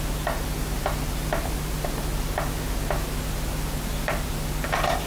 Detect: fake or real real